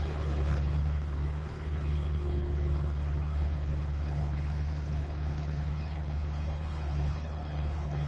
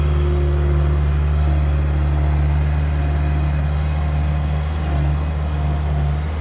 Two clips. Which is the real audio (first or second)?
second